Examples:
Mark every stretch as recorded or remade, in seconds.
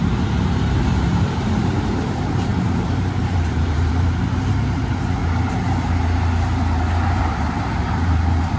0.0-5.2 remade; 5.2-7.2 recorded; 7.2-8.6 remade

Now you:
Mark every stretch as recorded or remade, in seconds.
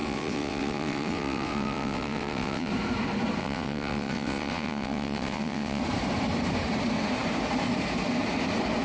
0.0-2.7 remade; 2.7-3.4 recorded; 3.4-5.8 remade; 5.8-8.8 recorded